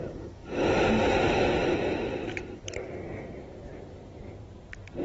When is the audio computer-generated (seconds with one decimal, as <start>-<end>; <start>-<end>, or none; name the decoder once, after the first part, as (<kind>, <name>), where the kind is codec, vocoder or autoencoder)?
0.4-1.1 (vocoder, BigVGAN v2); 1.6-3.1